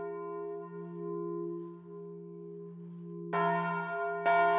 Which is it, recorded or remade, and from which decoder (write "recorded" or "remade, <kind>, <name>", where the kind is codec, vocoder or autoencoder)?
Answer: recorded